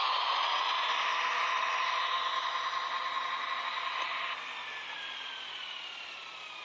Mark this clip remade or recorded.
recorded